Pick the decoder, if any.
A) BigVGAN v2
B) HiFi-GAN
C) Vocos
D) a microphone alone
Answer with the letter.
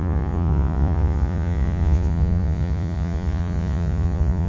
C